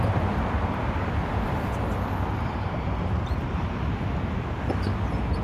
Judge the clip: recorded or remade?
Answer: recorded